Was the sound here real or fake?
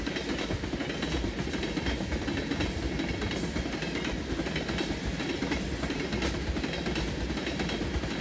real